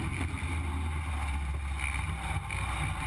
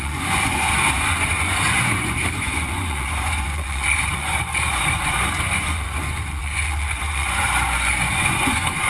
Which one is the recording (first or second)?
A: first